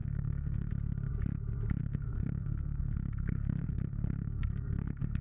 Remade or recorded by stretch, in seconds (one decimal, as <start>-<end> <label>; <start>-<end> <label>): 0.0-0.7 remade; 0.7-1.8 recorded; 1.8-5.2 remade